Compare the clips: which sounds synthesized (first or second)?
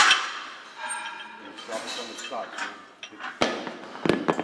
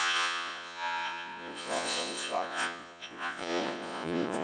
second